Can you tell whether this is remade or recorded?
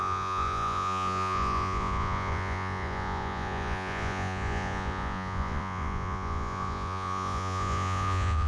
remade